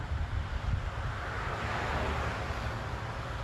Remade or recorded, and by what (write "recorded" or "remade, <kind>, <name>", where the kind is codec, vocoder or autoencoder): recorded